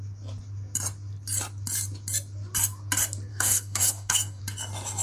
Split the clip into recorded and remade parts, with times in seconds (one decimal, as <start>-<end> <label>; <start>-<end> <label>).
0.0-3.3 recorded; 3.3-4.4 remade; 4.4-5.0 recorded